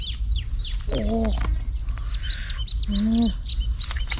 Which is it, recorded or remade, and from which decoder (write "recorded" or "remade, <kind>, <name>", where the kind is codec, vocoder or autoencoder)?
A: recorded